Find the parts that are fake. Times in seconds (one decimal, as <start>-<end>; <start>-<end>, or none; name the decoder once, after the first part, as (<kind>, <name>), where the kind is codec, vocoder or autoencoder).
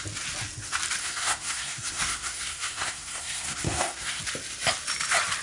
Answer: 1.0-4.2 (codec, SNAC)